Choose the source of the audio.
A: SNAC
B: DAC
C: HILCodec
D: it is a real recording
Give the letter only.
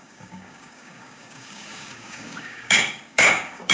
B